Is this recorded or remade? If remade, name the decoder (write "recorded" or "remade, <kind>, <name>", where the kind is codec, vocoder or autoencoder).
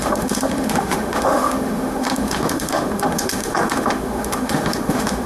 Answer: remade, autoencoder, DAC-VAE